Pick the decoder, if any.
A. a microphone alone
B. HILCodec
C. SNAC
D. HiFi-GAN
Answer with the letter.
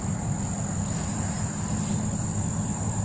A